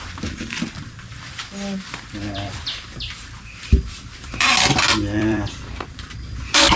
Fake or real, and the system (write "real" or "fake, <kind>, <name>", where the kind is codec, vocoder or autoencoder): fake, vocoder, BigVGAN v2